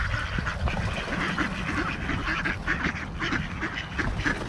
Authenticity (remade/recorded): recorded